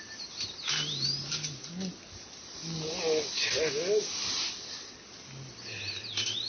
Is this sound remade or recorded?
remade